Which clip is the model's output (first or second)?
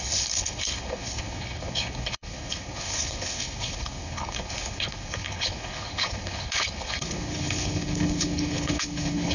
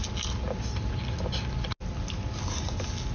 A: first